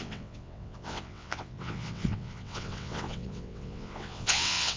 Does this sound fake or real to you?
fake